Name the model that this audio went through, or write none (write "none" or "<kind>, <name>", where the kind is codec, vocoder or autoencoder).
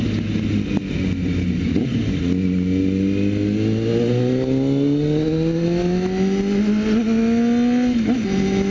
none